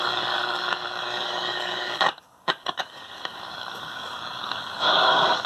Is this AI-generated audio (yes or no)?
yes